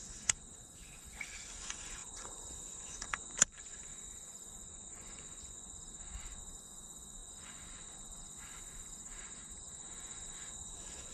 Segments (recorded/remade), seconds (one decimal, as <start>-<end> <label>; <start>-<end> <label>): 0.0-11.1 remade